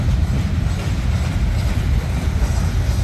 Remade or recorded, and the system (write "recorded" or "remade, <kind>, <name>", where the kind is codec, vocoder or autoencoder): recorded